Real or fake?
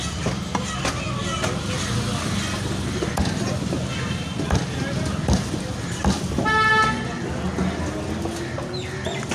real